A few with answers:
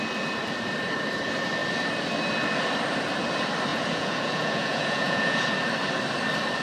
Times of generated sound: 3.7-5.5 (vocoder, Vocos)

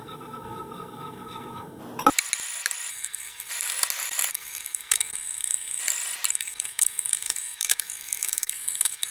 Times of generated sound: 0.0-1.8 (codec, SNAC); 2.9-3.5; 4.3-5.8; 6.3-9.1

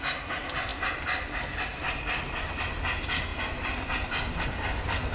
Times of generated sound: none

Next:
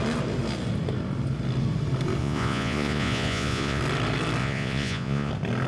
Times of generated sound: 2.2-3.8 (vocoder, Vocos); 4.4-5.3

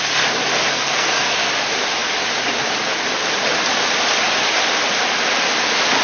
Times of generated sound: 0.7-1.5 (codec, SNAC)